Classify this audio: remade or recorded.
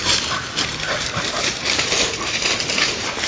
remade